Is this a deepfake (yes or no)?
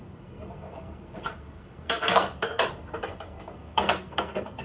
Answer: yes